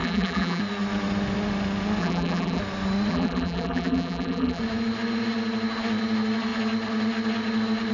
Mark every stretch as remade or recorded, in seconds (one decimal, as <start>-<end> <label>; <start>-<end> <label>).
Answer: 0.0-0.6 remade; 0.6-2.0 recorded; 2.0-2.6 remade; 2.6-3.1 recorded; 3.1-4.6 remade; 4.6-7.9 recorded